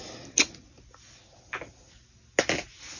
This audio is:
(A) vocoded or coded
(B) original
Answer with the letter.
B